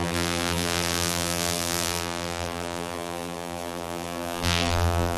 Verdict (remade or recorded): remade